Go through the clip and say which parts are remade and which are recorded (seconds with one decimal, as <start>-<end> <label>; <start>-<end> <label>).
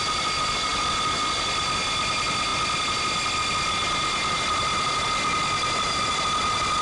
0.0-6.8 recorded